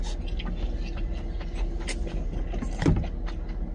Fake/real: real